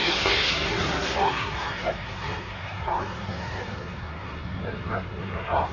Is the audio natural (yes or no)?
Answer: no